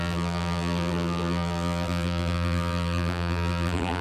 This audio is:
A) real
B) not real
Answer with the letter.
B